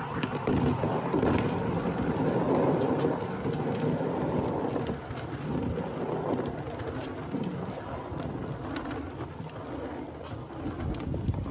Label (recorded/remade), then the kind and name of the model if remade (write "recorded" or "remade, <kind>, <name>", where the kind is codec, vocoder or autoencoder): recorded